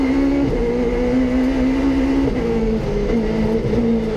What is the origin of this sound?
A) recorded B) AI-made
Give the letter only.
A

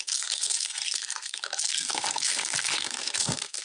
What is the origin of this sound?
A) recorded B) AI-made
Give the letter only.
B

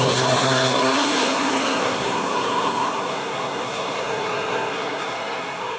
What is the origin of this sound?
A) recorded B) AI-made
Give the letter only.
B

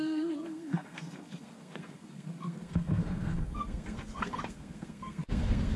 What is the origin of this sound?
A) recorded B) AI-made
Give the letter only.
B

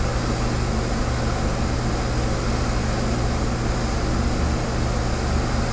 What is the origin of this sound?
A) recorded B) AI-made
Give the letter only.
A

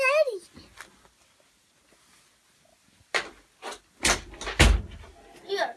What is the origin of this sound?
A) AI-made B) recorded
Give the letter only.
B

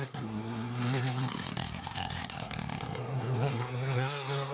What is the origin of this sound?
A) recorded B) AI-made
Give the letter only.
B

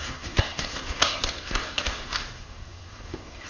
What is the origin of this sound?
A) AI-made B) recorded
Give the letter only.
A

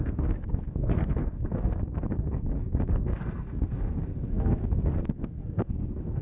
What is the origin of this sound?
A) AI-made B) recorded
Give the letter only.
A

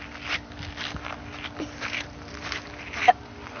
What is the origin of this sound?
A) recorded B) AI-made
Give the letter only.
A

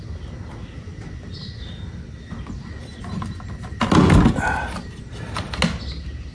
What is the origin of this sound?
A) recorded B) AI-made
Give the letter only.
A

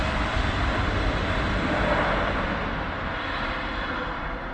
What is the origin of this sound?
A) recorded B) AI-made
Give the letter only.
A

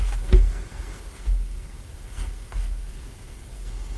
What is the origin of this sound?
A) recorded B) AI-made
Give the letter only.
B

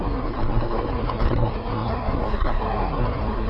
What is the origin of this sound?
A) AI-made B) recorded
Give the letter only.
A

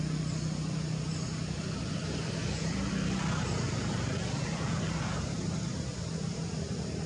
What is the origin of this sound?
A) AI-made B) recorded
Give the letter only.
B